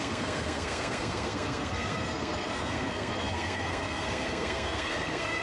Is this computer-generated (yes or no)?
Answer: yes